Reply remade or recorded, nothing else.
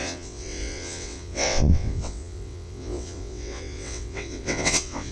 remade